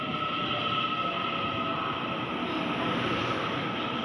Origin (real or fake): real